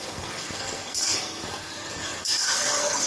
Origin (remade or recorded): remade